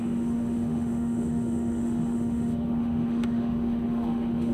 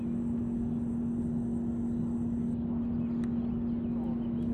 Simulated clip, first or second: first